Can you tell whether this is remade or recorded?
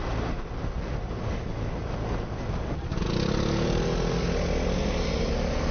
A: recorded